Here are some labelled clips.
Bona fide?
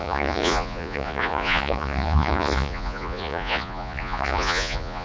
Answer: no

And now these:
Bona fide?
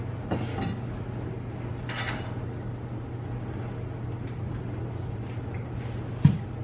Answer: yes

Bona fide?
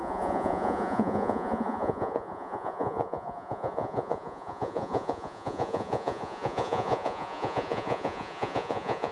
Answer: no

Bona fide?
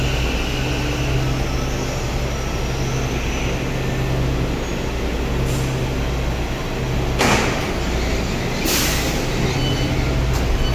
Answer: yes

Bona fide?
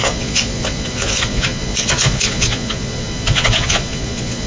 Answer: no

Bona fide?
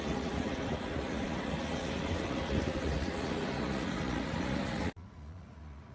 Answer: no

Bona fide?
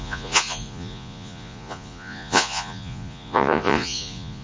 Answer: no